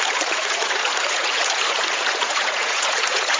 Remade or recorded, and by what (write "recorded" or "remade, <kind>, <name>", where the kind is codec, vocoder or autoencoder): remade, vocoder, Vocos